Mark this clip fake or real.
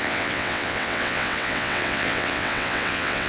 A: fake